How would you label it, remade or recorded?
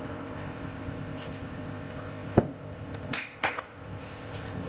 remade